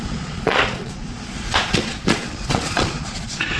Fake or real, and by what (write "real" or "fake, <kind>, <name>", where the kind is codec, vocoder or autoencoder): fake, vocoder, Vocos